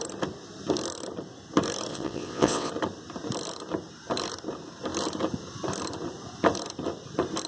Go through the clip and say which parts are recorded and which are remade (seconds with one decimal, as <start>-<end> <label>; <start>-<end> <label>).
0.0-1.9 recorded; 1.9-2.7 remade; 2.7-7.5 recorded

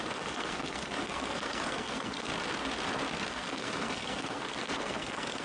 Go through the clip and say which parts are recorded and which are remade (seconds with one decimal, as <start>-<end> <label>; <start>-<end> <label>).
0.0-2.3 remade; 2.3-3.3 recorded; 3.3-5.4 remade

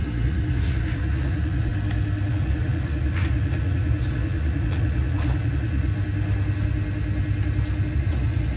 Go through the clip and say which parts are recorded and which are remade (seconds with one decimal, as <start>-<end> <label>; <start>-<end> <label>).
0.0-1.7 remade; 1.7-2.3 recorded; 2.3-5.9 remade; 5.9-7.9 recorded; 7.9-8.6 remade

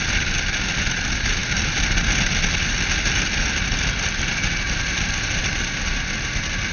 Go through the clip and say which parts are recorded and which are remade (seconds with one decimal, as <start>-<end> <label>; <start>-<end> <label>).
0.0-1.4 recorded; 1.4-5.4 remade; 5.4-6.7 recorded

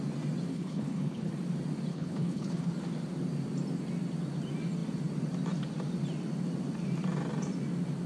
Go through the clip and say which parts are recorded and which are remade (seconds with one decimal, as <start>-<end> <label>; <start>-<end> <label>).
0.0-0.5 recorded; 0.5-1.3 remade; 1.3-1.9 recorded; 1.9-2.7 remade; 2.7-8.1 recorded

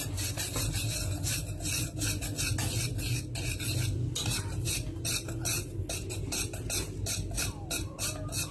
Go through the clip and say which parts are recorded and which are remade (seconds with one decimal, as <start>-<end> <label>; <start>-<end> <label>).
0.0-8.5 recorded

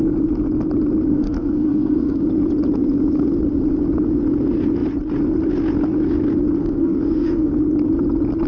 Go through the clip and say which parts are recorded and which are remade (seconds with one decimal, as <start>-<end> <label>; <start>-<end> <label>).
0.0-1.1 recorded; 1.1-2.2 remade; 2.2-6.6 recorded; 6.6-7.5 remade; 7.5-8.5 recorded